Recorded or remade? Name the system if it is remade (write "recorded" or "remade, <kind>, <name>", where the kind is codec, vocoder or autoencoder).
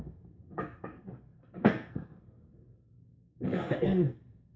remade, codec, SNAC